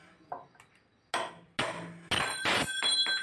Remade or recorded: recorded